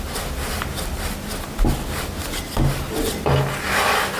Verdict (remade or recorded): recorded